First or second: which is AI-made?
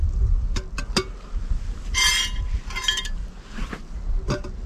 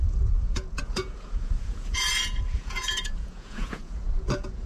second